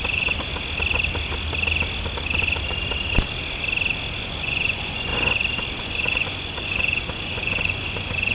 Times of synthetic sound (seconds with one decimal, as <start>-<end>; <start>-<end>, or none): 0.0-0.5; 4.2-5.1; 5.8-8.3